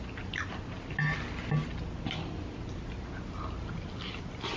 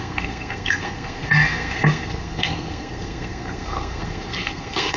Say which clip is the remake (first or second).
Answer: second